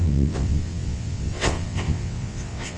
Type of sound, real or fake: fake